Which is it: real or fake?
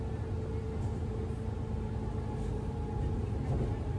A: real